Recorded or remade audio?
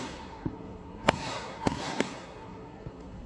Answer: remade